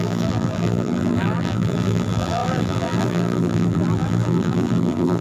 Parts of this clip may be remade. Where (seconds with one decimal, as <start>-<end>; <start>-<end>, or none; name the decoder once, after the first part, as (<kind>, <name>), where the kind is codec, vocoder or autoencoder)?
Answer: 0.0-5.2 (vocoder, BigVGAN v2)